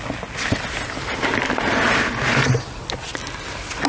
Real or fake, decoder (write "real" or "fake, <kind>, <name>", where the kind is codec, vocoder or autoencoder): real